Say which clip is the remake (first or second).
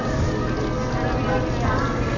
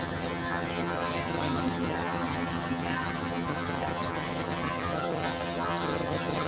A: second